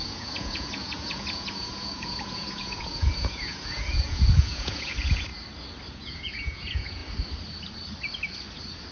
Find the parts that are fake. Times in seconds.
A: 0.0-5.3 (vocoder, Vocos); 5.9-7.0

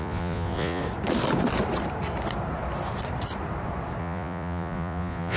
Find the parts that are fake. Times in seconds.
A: 0.0-0.8 (vocoder, Vocos); 4.0-5.4

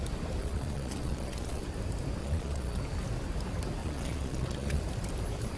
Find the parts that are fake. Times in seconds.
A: 0.4-1.6 (vocoder, Vocos); 2.2-2.8; 3.8-4.8

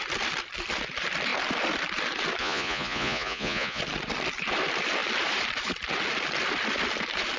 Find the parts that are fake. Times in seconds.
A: 2.4-3.8 (vocoder, Vocos)